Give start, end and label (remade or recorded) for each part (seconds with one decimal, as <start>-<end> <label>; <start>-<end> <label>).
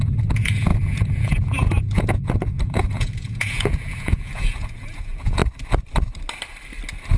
0.0-5.4 remade; 5.4-7.2 recorded